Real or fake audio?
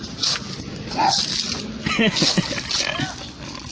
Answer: real